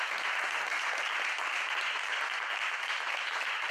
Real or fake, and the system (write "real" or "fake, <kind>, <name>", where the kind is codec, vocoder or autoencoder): fake, vocoder, BigVGAN v2